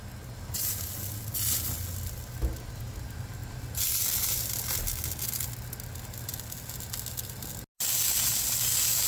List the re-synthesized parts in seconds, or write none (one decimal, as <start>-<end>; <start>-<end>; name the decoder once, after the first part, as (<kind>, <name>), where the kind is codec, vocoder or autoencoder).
none